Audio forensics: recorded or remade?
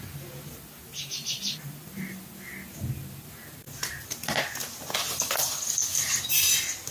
recorded